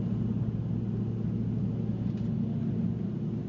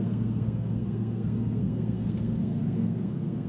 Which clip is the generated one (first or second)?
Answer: second